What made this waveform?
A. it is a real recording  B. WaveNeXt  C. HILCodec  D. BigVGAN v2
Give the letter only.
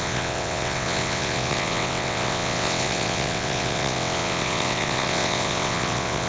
B